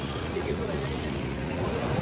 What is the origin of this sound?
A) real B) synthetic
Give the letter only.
B